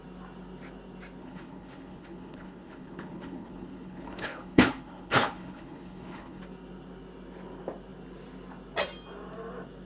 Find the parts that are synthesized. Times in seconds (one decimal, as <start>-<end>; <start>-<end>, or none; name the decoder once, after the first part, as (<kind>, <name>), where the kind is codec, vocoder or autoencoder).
1.2-6.4 (codec, HILCodec)